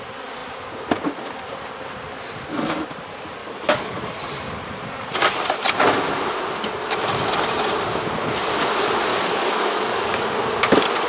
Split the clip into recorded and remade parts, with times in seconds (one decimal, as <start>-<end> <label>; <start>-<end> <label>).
0.0-3.4 recorded; 3.4-4.1 remade; 4.1-9.1 recorded; 9.1-10.2 remade; 10.2-11.1 recorded